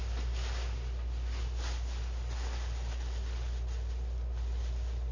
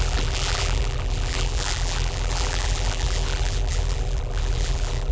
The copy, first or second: second